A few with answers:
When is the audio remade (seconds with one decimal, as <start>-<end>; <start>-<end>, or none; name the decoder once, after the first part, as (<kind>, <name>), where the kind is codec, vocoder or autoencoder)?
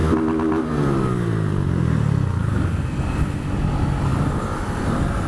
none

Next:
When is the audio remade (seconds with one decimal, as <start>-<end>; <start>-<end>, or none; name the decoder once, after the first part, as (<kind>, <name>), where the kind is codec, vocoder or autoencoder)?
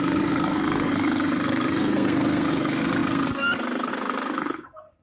0.0-5.0 (codec, SNAC)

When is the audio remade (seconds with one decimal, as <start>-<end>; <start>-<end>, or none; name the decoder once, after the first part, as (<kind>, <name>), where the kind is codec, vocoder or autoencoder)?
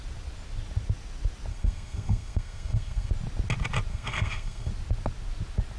1.5-3.1 (codec, SNAC); 3.9-4.7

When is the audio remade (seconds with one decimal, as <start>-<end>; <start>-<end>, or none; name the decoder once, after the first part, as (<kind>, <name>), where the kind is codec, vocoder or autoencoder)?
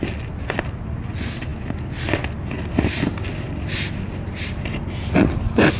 none